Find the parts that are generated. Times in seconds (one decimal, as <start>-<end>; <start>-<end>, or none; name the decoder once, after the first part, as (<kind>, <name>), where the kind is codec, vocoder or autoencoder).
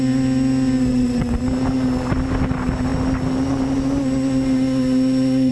0.9-1.4 (vocoder, WaveNeXt)